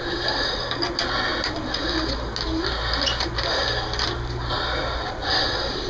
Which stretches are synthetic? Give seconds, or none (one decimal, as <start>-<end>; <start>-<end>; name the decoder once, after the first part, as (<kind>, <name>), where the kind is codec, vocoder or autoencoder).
none

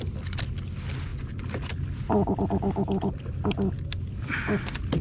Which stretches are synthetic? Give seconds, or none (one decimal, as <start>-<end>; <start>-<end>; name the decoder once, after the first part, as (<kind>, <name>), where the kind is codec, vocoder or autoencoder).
none

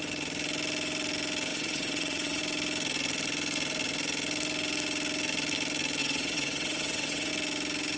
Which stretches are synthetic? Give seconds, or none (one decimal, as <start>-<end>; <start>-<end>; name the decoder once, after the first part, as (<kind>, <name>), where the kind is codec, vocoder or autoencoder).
1.5-2.4 (vocoder, WaveNeXt); 6.0-7.3

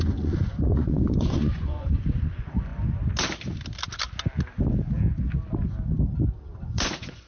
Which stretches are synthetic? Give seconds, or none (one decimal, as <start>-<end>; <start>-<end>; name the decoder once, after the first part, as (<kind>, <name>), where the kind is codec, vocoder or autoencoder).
0.0-2.7 (vocoder, Vocos); 6.6-7.3

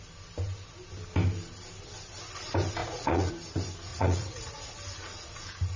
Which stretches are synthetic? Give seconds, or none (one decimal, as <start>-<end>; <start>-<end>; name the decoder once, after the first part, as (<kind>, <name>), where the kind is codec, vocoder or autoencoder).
2.8-3.3 (vocoder, Vocos); 3.9-4.7